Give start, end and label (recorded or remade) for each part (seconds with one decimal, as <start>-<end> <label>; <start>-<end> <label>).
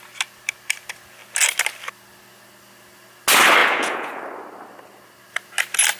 0.0-3.6 recorded; 3.6-4.2 remade; 4.2-6.0 recorded